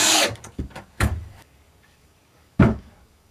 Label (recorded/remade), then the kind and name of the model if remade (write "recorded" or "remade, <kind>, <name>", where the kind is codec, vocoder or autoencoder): remade, codec, DAC